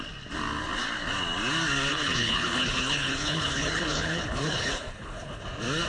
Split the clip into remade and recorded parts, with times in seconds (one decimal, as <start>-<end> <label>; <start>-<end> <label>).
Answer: 0.0-1.9 recorded; 1.9-5.4 remade; 5.4-5.9 recorded